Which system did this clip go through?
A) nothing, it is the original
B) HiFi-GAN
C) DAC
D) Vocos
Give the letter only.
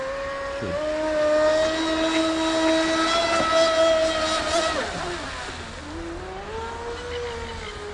A